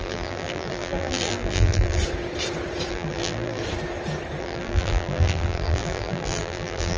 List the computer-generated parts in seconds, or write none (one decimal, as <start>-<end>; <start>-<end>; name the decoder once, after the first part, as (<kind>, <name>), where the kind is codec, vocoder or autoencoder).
0.0-2.0 (vocoder, BigVGAN v2); 2.9-3.6; 4.4-7.0